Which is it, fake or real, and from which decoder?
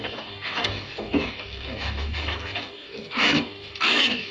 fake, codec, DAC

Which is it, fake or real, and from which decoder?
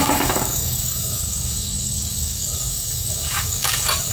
fake, codec, DAC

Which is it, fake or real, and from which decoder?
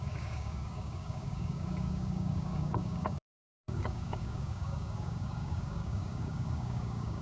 fake, codec, DAC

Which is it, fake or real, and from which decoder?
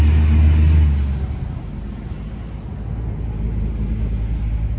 real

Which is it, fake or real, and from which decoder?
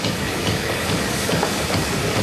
fake, codec, DAC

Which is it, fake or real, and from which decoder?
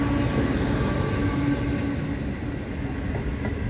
real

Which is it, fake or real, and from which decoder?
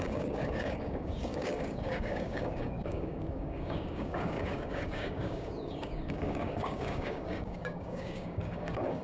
fake, codec, DAC